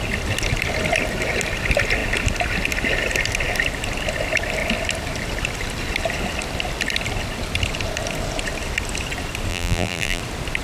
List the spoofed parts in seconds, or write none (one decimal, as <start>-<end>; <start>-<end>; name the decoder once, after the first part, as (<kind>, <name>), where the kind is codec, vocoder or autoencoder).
9.5-10.2 (vocoder, BigVGAN v2)